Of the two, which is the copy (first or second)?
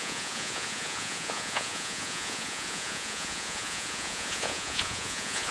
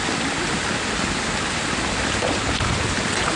first